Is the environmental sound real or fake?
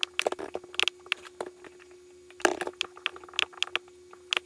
real